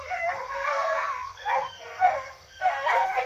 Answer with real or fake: fake